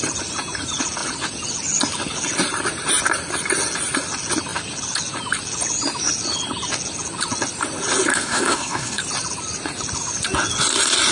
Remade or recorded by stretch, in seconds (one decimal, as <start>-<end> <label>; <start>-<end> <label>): 0.0-8.1 recorded; 8.1-9.0 remade; 9.0-11.1 recorded